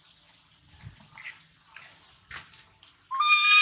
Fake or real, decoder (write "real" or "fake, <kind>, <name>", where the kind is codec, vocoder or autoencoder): real